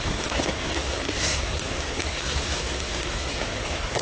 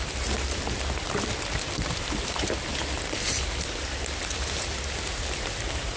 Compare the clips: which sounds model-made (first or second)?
first